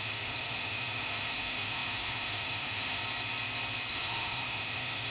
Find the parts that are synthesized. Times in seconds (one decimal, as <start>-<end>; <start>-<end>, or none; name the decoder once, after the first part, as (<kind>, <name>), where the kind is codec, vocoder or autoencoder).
0.0-3.0 (autoencoder, DAC-VAE); 3.9-5.1